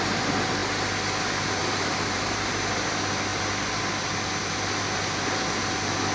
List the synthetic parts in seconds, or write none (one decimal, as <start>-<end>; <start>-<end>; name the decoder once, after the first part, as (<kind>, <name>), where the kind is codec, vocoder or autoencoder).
1.6-2.5 (vocoder, BigVGAN v2)